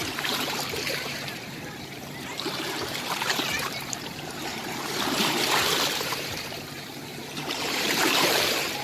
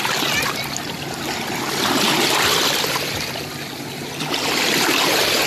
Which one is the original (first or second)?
second